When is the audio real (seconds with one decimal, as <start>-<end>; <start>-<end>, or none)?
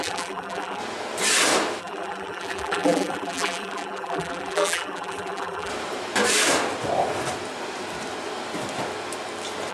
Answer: 0.8-1.8; 5.7-9.7